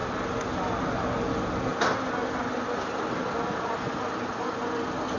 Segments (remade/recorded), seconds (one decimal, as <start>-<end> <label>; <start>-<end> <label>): 0.0-5.2 recorded